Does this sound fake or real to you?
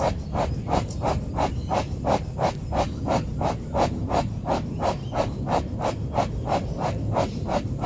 real